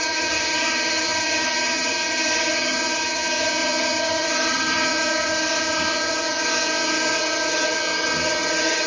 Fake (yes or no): yes